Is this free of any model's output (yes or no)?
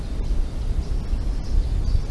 yes